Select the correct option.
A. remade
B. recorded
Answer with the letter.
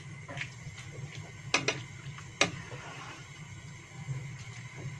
B